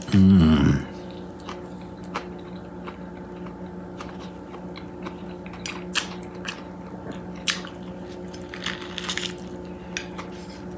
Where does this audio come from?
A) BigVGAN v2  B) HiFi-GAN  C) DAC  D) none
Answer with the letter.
D